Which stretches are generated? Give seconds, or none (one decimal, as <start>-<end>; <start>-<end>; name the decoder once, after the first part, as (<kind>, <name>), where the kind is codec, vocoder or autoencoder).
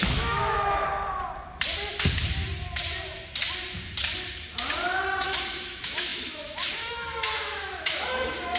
0.0-0.9 (autoencoder, DAC-VAE); 5.0-8.6